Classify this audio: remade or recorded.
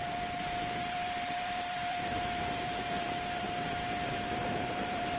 remade